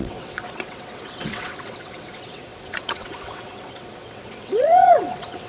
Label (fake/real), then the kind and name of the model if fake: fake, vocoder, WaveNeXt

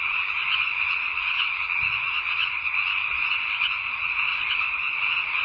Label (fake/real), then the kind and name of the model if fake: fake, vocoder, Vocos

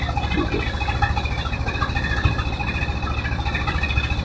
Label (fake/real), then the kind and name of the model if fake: real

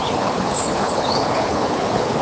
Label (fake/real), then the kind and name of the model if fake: fake, codec, HILCodec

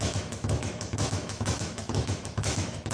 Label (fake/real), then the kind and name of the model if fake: fake, autoencoder, DAC-VAE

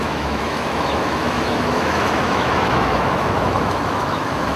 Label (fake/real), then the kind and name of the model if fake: fake, autoencoder, DAC-VAE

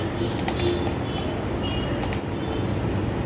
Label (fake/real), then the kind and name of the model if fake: real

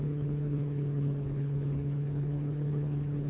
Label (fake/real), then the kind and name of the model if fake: fake, codec, HILCodec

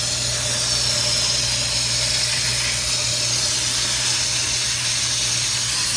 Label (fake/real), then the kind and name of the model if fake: real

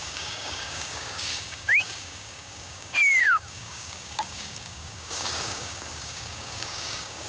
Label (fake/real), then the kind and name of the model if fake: fake, codec, DAC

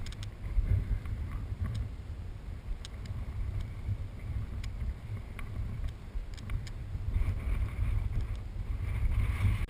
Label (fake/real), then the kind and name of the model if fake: fake, vocoder, BigVGAN v2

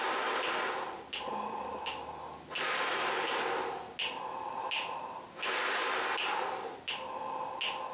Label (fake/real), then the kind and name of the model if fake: real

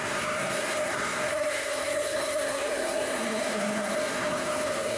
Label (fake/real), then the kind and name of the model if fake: fake, codec, SNAC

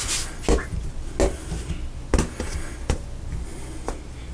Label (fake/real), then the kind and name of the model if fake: real